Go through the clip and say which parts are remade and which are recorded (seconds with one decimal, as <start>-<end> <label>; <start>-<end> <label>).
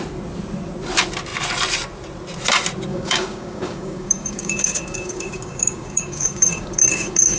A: 0.0-2.9 recorded; 2.9-7.4 remade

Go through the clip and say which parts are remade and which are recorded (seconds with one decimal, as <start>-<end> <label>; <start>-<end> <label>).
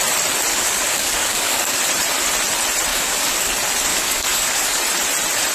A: 0.0-0.5 recorded; 0.5-1.8 remade; 1.8-2.9 recorded; 2.9-3.5 remade; 3.5-3.9 recorded; 3.9-4.8 remade; 4.8-5.5 recorded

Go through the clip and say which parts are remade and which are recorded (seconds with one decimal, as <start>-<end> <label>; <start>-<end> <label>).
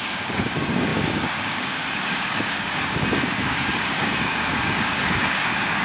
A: 0.0-5.8 remade